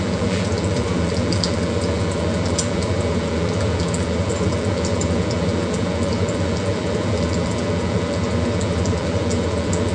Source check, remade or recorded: remade